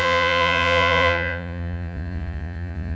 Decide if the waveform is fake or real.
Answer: fake